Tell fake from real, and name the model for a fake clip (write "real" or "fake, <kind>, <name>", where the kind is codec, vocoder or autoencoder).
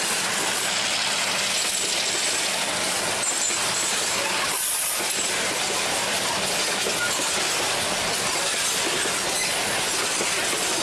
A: real